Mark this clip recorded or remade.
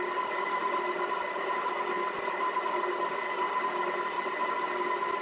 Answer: recorded